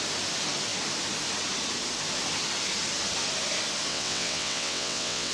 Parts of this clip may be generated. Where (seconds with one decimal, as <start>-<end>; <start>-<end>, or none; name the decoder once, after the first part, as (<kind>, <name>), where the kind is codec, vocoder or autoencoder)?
3.9-5.3 (vocoder, WaveNeXt)